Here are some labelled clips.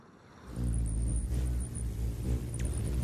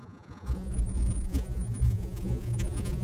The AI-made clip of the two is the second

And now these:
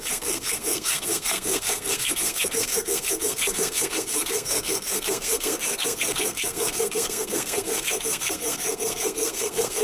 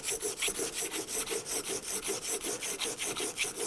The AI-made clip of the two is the first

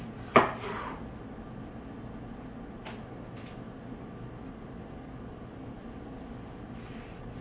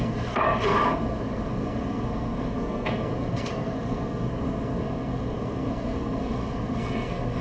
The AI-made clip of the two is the second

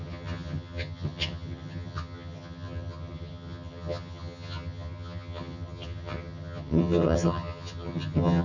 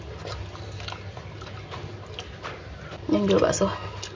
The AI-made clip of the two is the first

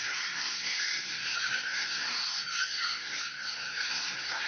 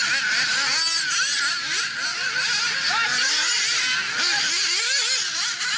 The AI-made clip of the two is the first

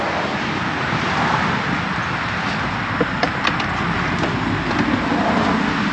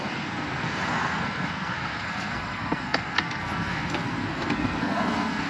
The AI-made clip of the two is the second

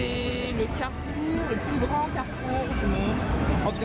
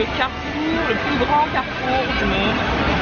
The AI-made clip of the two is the first